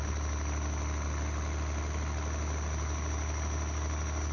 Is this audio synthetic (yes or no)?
no